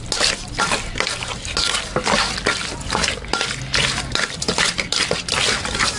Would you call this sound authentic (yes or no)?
yes